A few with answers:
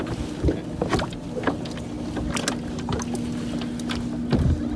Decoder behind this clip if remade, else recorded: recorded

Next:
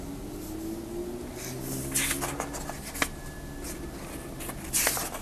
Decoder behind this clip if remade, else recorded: recorded